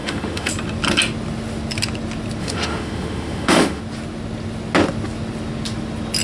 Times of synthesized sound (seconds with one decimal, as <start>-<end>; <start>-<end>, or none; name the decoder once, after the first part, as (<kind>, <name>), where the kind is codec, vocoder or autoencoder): 0.0-0.5 (autoencoder, DAC-VAE); 2.4-3.8